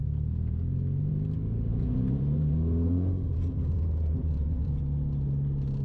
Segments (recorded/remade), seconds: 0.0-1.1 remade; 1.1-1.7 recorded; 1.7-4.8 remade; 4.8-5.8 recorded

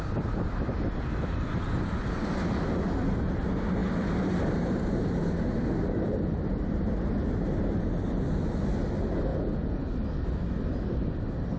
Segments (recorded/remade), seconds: 0.0-9.3 recorded; 9.3-9.9 remade; 9.9-11.6 recorded

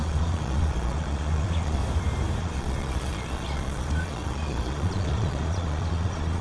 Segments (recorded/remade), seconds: 0.0-1.8 remade; 1.8-2.4 recorded; 2.4-6.4 remade

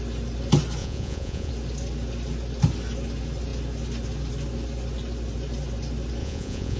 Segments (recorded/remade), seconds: 0.0-0.8 recorded; 0.8-1.5 remade; 1.5-6.2 recorded; 6.2-6.8 remade

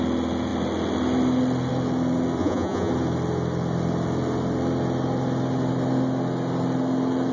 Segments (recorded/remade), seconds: 0.0-2.4 recorded; 2.4-2.9 remade; 2.9-7.3 recorded

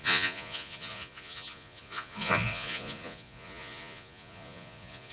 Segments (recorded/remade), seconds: 0.0-5.1 remade

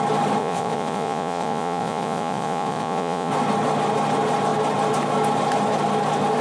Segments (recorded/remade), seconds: 0.0-0.4 recorded; 0.4-3.3 remade; 3.3-6.4 recorded

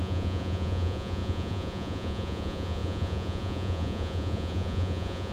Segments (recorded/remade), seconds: 0.0-5.3 remade